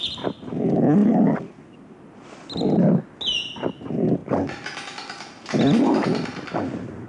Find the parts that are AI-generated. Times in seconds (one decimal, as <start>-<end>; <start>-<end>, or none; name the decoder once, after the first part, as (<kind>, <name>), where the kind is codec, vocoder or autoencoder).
none